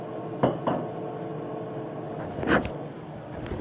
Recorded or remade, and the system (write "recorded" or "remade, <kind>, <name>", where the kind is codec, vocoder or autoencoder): recorded